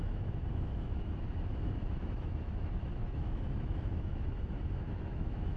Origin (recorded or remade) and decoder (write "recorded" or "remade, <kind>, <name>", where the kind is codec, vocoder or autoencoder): remade, autoencoder, DAC-VAE